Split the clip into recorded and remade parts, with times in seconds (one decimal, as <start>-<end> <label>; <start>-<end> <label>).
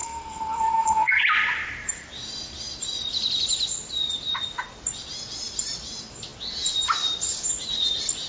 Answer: 0.0-1.2 remade; 1.2-8.3 recorded